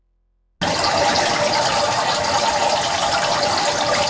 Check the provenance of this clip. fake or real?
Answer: real